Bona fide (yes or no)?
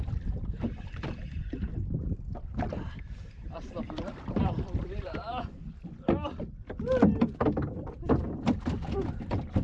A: no